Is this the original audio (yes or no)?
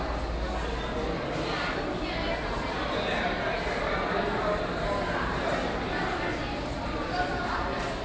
yes